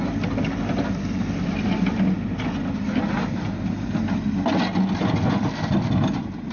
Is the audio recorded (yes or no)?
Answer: yes